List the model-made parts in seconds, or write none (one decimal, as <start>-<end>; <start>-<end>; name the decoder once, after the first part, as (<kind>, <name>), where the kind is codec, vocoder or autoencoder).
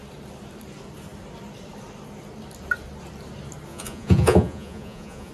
3.7-5.3 (vocoder, Vocos)